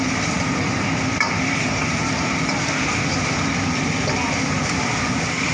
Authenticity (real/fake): real